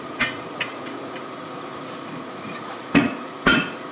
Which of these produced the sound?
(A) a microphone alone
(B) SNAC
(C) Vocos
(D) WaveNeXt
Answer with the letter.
C